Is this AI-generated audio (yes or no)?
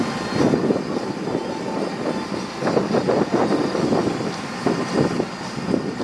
no